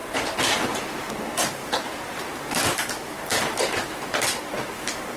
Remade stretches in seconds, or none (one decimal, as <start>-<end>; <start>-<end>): 0.0-1.1; 1.6-3.9